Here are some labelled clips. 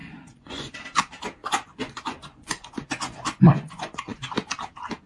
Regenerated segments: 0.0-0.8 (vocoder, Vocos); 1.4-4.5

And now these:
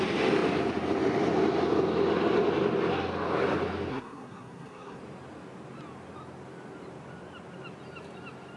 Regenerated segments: 3.9-5.0 (codec, SNAC)

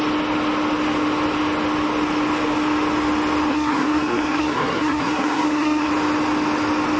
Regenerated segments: 3.5-5.9 (codec, SNAC)

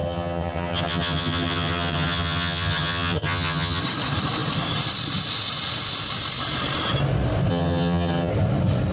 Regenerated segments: 0.0-3.8 (vocoder, HiFi-GAN); 7.5-8.3

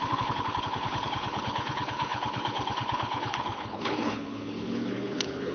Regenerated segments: 0.0-5.5 (codec, HILCodec)

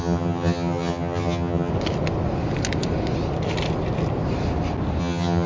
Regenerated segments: 0.0-1.7 (vocoder, HiFi-GAN); 5.0-5.5